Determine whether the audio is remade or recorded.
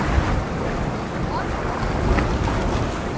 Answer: recorded